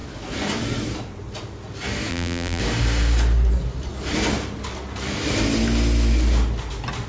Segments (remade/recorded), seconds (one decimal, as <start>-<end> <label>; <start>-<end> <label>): 0.0-2.1 recorded; 2.1-2.6 remade; 2.6-7.1 recorded